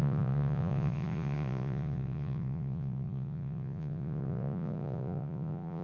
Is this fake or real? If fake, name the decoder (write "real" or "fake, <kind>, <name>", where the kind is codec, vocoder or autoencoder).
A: fake, vocoder, Vocos